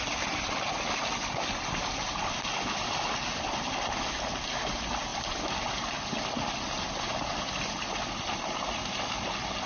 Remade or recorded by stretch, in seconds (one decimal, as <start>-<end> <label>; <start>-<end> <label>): 0.0-9.7 recorded